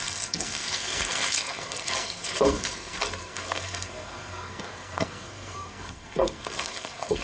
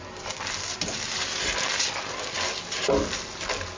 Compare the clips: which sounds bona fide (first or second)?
second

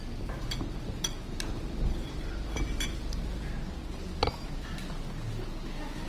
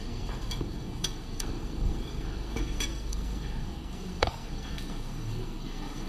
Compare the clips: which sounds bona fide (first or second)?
first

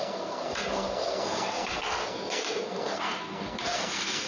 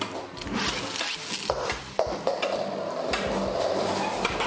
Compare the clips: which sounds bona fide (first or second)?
second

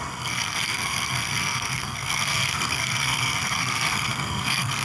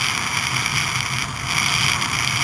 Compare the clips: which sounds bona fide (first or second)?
second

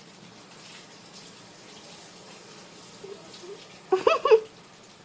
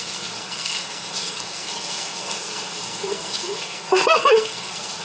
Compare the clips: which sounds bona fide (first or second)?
first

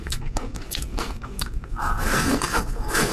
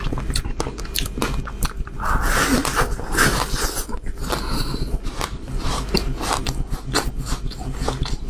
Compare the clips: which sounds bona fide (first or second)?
second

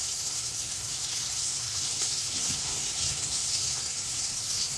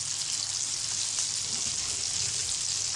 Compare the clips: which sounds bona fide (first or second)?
second